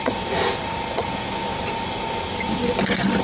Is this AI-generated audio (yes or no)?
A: yes